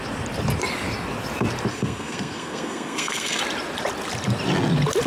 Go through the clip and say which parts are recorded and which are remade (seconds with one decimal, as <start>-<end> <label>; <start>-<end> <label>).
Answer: 0.0-1.7 recorded; 1.7-3.4 remade; 3.4-5.1 recorded